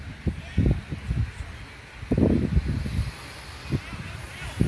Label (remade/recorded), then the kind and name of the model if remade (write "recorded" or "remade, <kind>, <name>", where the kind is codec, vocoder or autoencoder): recorded